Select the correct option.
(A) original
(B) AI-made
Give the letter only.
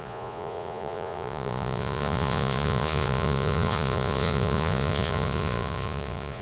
B